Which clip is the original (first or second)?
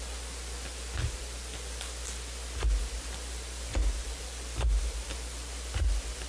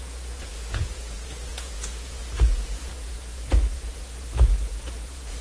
first